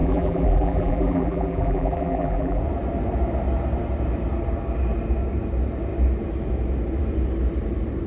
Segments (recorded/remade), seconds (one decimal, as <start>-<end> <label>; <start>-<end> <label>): 0.0-2.6 remade; 2.6-8.1 recorded